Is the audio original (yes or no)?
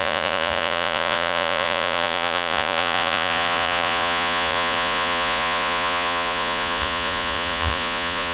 no